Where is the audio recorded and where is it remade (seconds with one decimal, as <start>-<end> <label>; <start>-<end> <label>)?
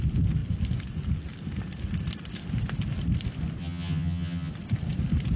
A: 0.0-3.6 recorded; 3.6-4.5 remade; 4.5-5.4 recorded